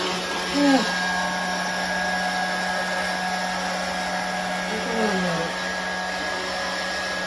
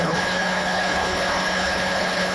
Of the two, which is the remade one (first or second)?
second